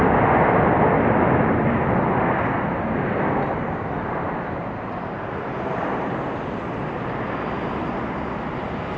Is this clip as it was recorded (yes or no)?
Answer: yes